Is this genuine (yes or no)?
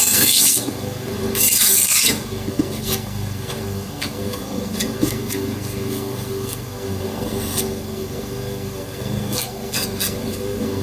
no